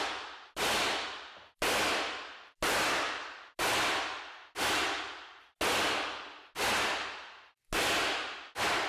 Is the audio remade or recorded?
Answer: recorded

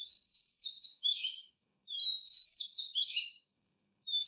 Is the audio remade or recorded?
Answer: remade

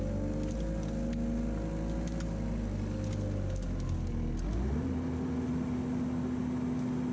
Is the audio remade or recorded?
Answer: recorded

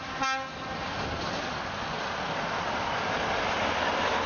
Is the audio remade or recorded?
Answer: recorded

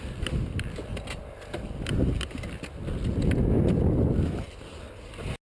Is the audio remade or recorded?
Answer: recorded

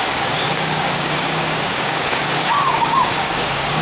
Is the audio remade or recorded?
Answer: remade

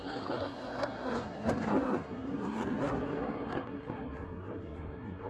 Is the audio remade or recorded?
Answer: remade